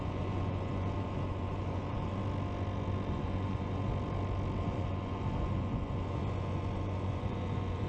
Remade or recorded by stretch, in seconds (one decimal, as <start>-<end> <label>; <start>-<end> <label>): 0.0-2.2 remade; 2.2-3.1 recorded; 3.1-3.9 remade; 3.9-4.6 recorded; 4.6-7.9 remade